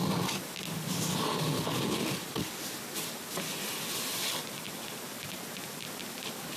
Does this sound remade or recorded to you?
recorded